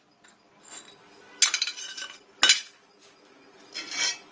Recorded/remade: recorded